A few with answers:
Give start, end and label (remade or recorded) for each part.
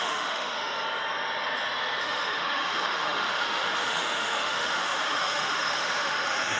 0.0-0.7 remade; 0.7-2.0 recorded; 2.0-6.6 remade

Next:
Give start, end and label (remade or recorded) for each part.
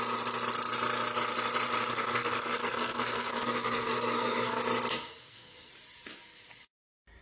0.0-1.9 recorded; 1.9-4.6 remade; 4.6-5.0 recorded; 5.0-5.7 remade; 5.7-7.2 recorded